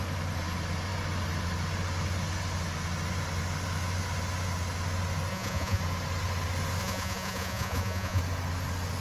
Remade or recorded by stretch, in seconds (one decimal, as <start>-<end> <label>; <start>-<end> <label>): 0.0-5.3 recorded; 5.3-5.8 remade; 5.8-6.8 recorded; 6.8-8.2 remade; 8.2-9.0 recorded